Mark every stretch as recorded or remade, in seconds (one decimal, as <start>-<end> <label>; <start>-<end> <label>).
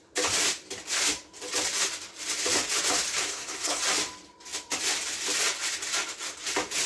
0.0-3.2 recorded; 3.2-3.8 remade; 3.8-6.9 recorded